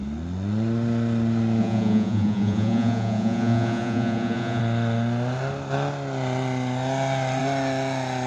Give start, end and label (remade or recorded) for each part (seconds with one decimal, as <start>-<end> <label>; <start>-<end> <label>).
0.0-1.6 recorded; 1.6-4.6 remade; 4.6-8.3 recorded